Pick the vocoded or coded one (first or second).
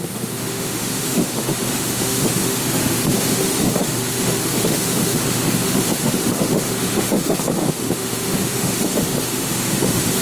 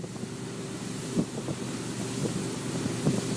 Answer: first